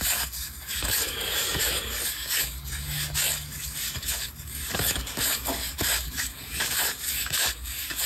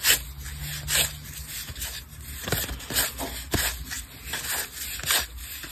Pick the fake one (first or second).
first